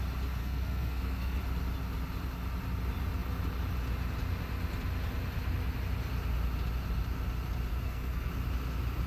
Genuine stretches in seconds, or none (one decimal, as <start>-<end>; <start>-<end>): 0.0-0.4; 1.4-7.7; 8.3-9.1